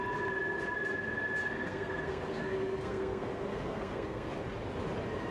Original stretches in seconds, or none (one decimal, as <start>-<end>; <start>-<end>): 0.0-1.4; 4.3-5.3